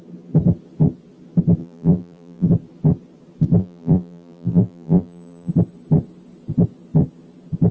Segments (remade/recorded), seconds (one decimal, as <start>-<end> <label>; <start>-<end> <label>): 0.0-1.6 recorded; 1.6-2.5 remade; 2.5-3.6 recorded; 3.6-5.5 remade; 5.5-7.7 recorded